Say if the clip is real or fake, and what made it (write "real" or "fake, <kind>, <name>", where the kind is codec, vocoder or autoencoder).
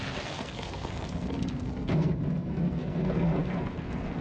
fake, codec, SNAC